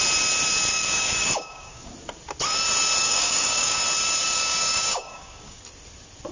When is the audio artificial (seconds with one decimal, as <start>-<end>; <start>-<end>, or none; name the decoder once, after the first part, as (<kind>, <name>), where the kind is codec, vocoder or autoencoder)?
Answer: 0.7-1.9 (codec, DAC); 3.0-3.8; 4.2-5.6